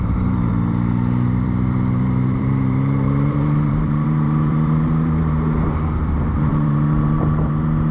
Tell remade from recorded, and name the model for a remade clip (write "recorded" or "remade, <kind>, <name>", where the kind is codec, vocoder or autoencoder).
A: remade, vocoder, BigVGAN v2